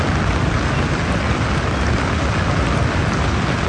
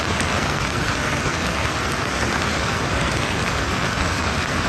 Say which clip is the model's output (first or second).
second